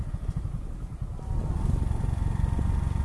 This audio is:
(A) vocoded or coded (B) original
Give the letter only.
B